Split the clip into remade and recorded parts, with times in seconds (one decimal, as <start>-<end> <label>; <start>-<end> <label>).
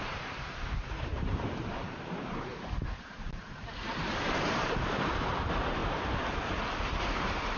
0.0-5.8 remade; 5.8-7.0 recorded; 7.0-7.6 remade